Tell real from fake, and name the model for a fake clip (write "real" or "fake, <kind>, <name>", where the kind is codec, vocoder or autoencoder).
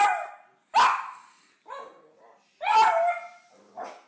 real